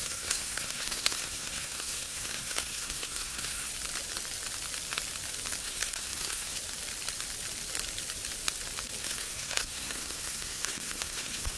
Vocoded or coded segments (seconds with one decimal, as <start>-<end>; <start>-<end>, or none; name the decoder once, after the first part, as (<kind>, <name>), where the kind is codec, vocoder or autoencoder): 0.0-3.7 (codec, SNAC); 5.6-6.6; 9.0-11.6

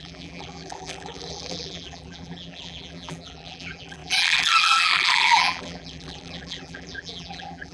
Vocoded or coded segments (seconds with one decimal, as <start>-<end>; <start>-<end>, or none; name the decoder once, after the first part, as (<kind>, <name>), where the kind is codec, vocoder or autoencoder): 0.0-7.7 (vocoder, BigVGAN v2)

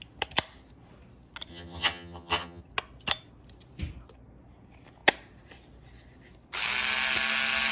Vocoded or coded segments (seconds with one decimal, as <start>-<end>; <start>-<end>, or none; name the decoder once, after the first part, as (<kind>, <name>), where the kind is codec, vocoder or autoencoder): 1.5-2.6 (vocoder, HiFi-GAN)

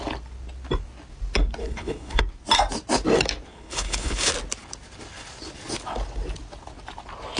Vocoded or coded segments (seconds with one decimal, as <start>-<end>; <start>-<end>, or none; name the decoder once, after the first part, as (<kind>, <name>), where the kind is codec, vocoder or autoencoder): 1.6-2.2 (codec, HILCodec); 3.5-4.3

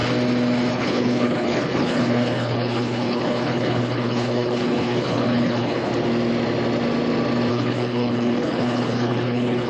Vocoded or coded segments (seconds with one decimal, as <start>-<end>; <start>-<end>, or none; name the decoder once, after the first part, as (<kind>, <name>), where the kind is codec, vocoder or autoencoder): 0.7-5.9 (codec, HILCodec); 7.5-9.7

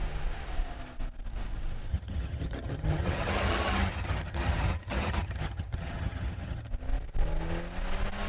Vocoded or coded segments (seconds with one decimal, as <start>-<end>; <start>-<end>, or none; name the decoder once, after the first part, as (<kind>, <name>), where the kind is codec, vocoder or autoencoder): 1.9-6.7 (vocoder, HiFi-GAN)

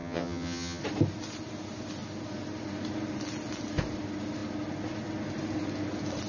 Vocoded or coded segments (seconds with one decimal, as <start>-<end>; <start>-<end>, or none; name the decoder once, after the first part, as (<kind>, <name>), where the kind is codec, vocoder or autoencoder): 0.0-0.8 (vocoder, HiFi-GAN)

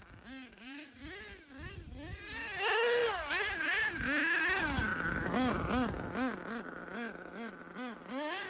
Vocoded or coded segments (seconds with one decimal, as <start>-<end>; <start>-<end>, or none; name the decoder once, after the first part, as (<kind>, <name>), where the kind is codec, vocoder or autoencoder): 0.5-1.0 (vocoder, Vocos)